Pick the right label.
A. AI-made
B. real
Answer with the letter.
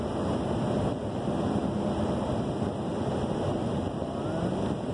B